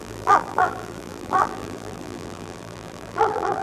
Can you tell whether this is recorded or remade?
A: remade